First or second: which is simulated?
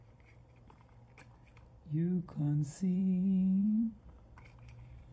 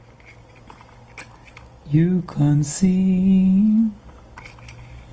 first